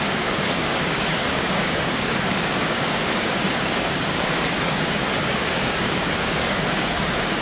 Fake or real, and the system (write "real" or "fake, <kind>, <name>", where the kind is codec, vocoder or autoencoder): fake, codec, DAC